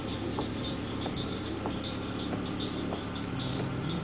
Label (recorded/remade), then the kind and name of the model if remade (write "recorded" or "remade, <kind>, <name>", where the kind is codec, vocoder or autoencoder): remade, vocoder, BigVGAN v2